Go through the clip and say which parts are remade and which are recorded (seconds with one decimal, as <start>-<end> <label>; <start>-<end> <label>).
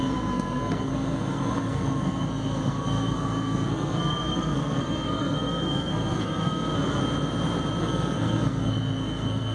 0.0-7.0 remade; 7.0-7.8 recorded; 7.8-9.5 remade